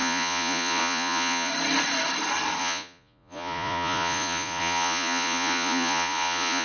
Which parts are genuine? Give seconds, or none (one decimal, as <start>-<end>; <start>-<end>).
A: 1.5-2.6